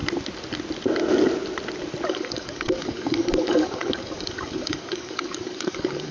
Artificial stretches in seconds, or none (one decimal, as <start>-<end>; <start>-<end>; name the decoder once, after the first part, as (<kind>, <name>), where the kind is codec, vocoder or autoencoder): 2.1-6.1 (codec, DAC)